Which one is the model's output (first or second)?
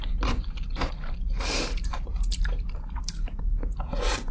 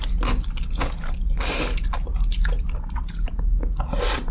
first